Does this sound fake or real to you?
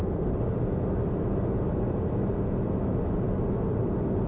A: real